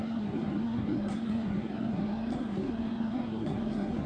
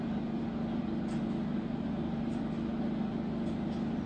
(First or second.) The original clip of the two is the second